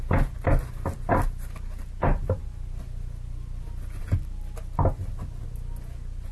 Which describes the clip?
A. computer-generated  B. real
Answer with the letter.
B